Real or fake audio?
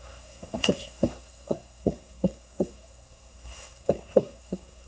fake